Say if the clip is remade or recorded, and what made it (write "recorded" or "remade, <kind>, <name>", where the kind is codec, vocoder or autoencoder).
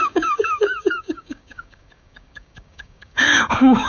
remade, codec, DAC